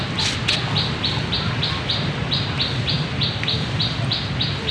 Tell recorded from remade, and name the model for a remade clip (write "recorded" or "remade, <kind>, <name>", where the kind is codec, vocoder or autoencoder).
remade, vocoder, BigVGAN v2